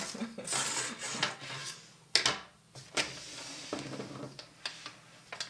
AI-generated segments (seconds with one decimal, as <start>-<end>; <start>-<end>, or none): none